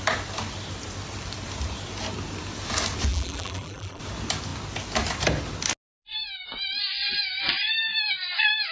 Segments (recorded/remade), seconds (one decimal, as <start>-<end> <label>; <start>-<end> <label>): 0.0-3.1 recorded; 3.1-4.0 remade; 4.0-8.7 recorded